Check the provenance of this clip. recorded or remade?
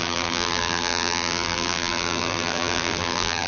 remade